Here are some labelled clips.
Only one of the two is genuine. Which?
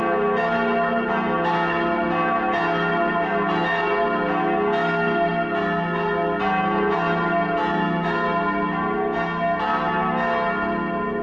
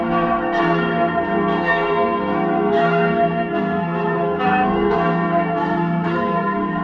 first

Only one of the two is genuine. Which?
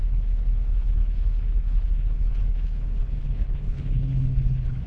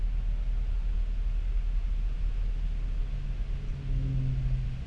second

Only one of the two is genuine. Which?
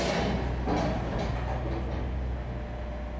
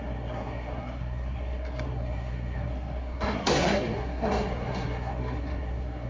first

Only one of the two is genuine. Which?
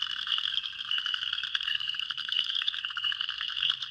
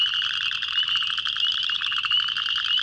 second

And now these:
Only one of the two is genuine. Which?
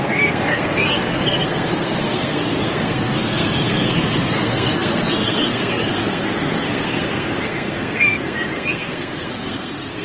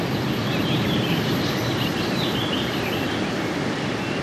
second